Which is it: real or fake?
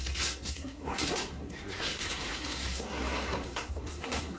fake